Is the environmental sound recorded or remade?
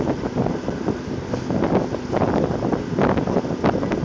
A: recorded